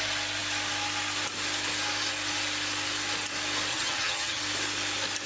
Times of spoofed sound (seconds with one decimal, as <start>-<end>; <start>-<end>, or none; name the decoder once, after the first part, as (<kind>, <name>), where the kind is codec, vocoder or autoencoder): 3.7-4.4 (vocoder, HiFi-GAN)